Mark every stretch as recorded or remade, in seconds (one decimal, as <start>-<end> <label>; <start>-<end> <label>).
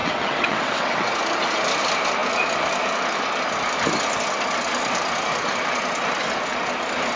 0.0-1.1 remade; 1.1-7.2 recorded